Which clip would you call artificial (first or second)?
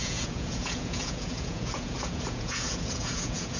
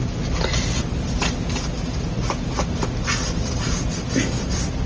first